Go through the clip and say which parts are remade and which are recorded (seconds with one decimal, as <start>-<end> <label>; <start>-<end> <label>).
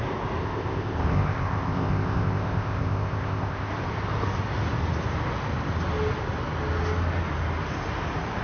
0.0-0.4 recorded; 0.4-3.7 remade; 3.7-8.4 recorded